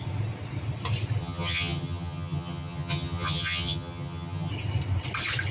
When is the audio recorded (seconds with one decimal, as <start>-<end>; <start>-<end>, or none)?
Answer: 0.0-1.2; 4.5-5.5